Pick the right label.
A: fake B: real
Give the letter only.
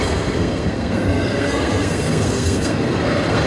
A